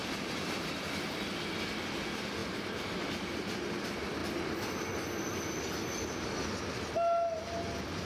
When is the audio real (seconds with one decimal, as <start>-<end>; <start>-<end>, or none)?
1.2-2.4; 3.1-8.1